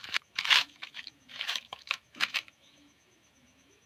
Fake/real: fake